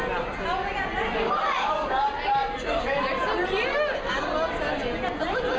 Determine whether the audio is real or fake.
real